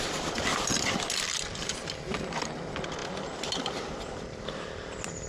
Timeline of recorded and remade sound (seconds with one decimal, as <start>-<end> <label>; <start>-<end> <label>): 0.0-3.0 recorded; 3.0-4.5 remade; 4.5-5.3 recorded